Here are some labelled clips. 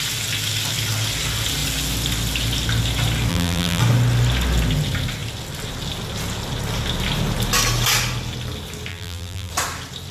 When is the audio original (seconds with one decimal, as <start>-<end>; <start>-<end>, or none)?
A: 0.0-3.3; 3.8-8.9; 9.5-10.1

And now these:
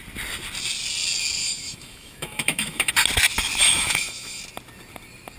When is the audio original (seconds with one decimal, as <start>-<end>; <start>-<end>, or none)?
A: 0.0-1.4; 2.9-3.6; 4.4-5.4

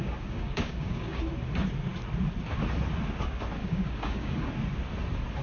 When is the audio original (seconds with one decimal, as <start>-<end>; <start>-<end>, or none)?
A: 1.2-3.6; 4.5-5.4

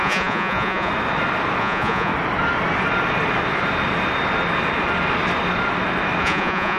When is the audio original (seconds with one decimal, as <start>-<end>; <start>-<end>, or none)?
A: 0.9-1.6; 2.1-6.2

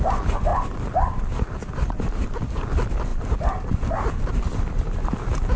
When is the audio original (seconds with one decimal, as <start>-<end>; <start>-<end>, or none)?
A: none